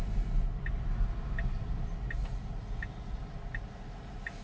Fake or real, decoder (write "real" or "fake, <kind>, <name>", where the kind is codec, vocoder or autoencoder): real